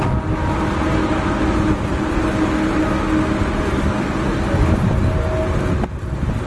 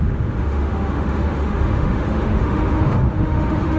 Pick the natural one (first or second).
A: first